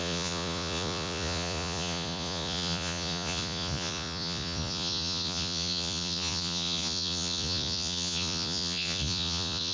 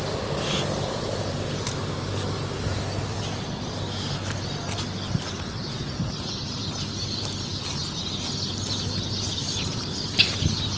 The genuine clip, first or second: second